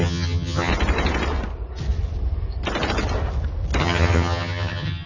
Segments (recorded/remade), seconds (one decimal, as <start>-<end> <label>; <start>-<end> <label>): 0.0-0.7 remade; 0.7-3.8 recorded; 3.8-5.1 remade